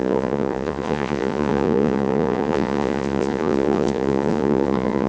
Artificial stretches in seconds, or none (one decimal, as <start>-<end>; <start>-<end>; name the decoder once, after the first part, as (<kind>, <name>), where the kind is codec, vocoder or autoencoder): 0.0-5.1 (vocoder, Vocos)